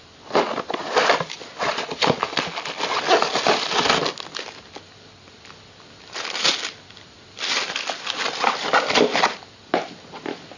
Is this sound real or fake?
real